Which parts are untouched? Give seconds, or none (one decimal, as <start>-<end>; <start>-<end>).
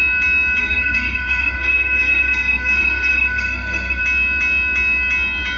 0.0-0.6; 4.0-5.6